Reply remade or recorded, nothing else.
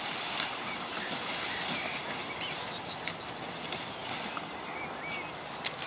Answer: recorded